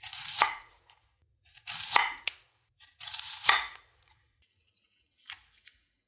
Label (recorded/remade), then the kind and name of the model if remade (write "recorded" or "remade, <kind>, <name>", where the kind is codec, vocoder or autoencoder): remade, vocoder, Vocos